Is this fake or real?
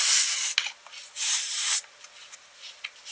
real